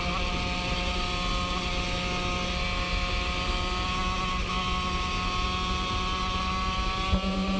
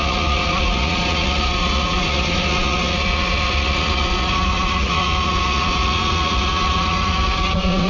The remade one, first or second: second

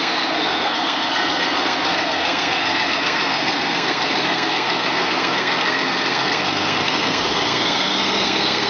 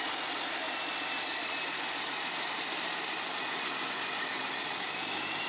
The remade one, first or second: first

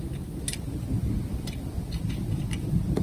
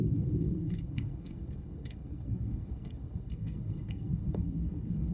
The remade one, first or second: second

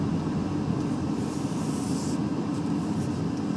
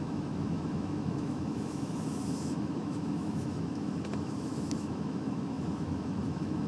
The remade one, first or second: second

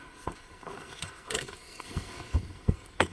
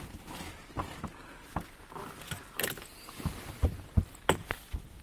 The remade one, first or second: first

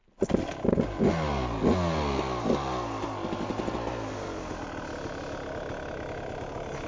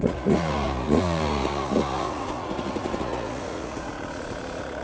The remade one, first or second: second